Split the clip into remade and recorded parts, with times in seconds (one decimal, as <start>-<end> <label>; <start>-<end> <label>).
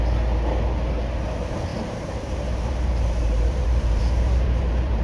0.0-1.7 recorded; 1.7-5.0 remade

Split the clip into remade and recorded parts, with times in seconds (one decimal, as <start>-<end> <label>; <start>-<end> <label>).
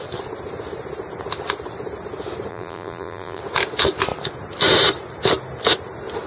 0.0-2.5 recorded; 2.5-3.4 remade; 3.4-6.3 recorded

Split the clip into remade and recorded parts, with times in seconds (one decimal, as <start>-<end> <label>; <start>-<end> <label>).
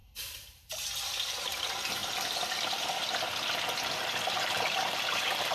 0.0-2.0 remade; 2.0-4.2 recorded; 4.2-5.5 remade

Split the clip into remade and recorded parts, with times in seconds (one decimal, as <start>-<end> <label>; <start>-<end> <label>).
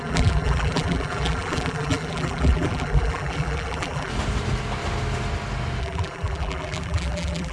0.0-4.1 remade; 4.1-5.8 recorded; 5.8-7.5 remade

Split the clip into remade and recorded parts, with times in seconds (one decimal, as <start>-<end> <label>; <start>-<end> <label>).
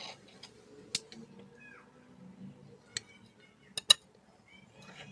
0.0-5.1 recorded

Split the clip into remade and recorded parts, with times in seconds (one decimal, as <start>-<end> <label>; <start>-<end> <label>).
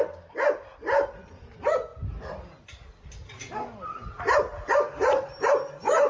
0.0-6.1 recorded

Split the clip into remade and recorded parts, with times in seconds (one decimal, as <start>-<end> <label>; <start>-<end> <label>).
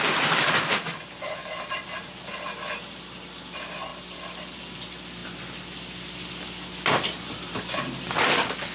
0.0-3.9 recorded; 3.9-4.6 remade; 4.6-8.7 recorded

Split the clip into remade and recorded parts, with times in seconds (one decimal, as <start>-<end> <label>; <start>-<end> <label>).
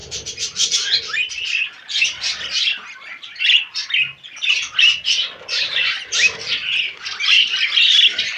0.0-8.4 recorded